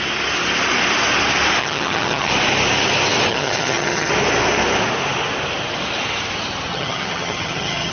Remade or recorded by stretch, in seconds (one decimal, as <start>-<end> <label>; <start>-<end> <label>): 0.0-1.6 recorded; 1.6-2.3 remade; 2.3-3.3 recorded; 3.3-4.1 remade; 4.1-6.7 recorded; 6.7-7.9 remade